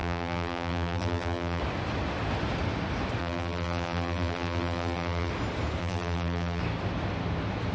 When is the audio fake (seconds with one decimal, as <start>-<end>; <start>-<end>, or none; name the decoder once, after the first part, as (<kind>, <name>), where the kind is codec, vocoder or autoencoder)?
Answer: 0.0-1.6 (vocoder, BigVGAN v2); 3.2-5.3; 5.8-6.6